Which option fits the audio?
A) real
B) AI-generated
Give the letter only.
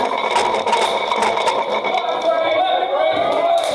A